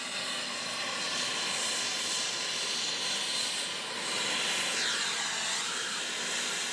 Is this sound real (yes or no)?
yes